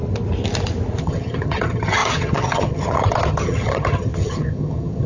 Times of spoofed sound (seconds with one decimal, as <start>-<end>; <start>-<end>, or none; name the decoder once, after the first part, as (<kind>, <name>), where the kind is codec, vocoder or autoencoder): 1.0-5.1 (vocoder, HiFi-GAN)